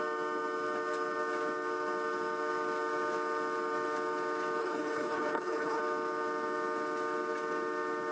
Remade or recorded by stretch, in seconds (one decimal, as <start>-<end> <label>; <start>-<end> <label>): 0.0-4.6 recorded; 4.6-5.8 remade; 5.8-8.1 recorded